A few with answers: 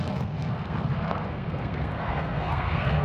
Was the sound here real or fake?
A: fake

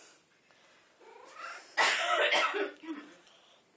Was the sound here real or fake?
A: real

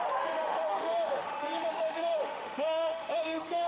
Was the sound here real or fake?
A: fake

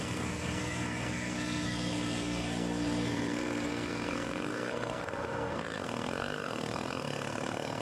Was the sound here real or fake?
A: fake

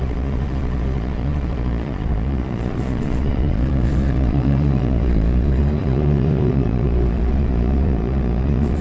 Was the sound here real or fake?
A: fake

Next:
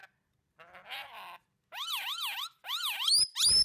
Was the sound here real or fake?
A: real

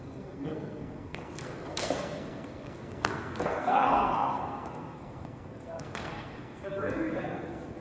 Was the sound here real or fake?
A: fake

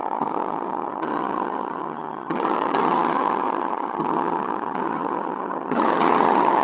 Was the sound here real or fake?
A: fake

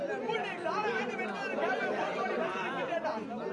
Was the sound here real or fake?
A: real